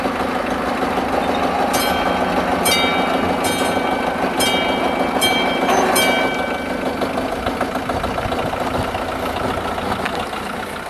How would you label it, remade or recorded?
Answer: recorded